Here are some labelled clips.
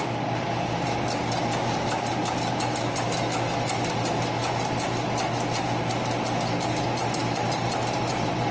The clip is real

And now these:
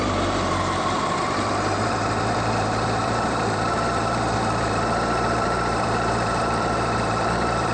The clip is fake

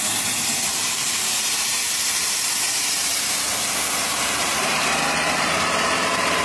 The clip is fake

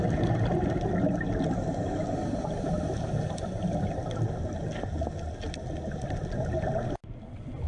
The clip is real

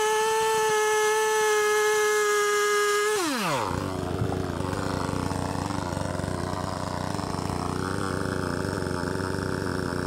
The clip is real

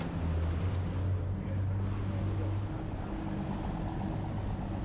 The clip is real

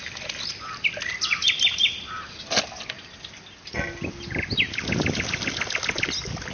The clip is real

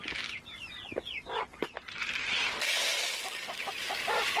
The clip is real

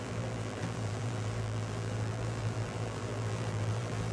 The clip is fake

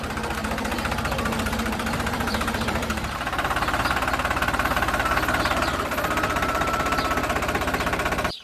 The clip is fake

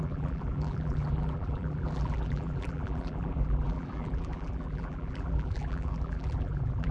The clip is fake